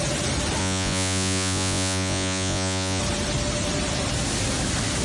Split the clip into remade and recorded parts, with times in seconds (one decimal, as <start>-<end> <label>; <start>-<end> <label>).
0.0-0.6 recorded; 0.6-3.0 remade; 3.0-5.0 recorded